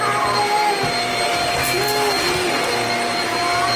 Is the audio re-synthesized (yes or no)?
no